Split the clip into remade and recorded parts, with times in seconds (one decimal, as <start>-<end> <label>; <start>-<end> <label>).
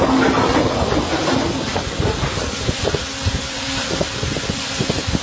0.0-5.2 recorded